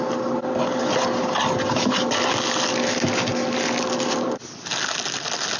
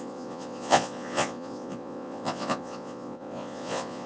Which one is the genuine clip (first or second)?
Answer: first